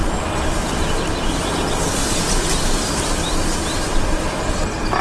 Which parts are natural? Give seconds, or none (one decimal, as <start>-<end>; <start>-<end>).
0.0-5.0